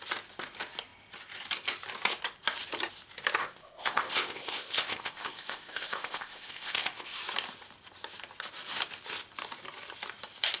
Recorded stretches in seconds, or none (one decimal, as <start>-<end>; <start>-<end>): 0.0-3.4; 7.2-10.6